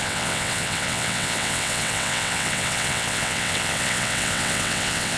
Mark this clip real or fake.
fake